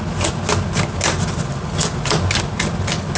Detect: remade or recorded recorded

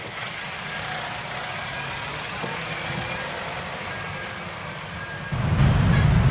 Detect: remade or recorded recorded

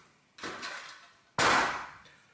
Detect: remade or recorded recorded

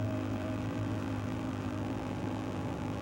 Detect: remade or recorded remade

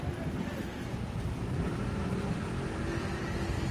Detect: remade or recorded recorded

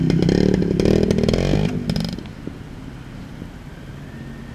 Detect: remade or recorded recorded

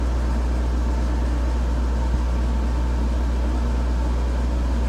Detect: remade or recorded recorded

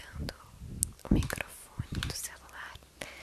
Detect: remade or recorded recorded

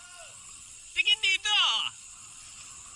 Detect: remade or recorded remade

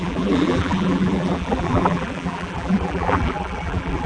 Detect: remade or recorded remade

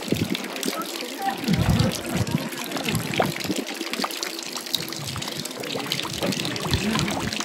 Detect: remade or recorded recorded